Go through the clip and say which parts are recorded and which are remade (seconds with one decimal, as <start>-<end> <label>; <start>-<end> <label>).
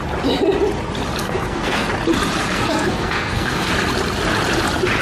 0.0-1.2 recorded; 1.2-1.9 remade; 1.9-2.4 recorded; 2.4-3.7 remade; 3.7-5.0 recorded